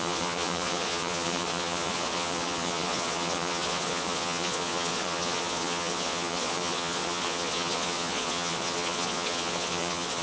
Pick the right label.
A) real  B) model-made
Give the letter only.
B